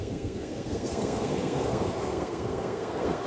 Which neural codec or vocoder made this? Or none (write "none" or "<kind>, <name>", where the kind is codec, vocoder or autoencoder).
codec, SNAC